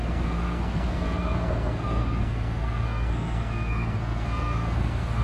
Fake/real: fake